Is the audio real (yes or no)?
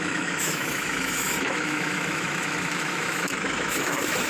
no